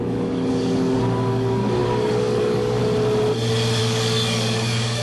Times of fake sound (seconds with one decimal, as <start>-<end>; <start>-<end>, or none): 0.0-2.8; 3.8-5.0